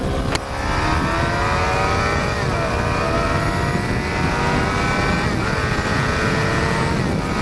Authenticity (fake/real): real